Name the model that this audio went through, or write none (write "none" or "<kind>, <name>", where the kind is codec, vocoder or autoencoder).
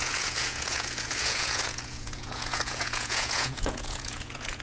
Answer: vocoder, Vocos